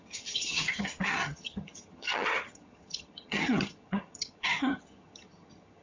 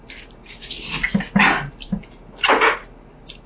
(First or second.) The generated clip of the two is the first